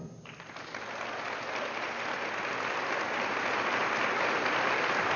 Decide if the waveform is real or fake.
fake